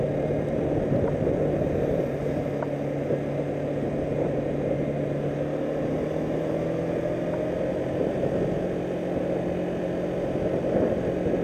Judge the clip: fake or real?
real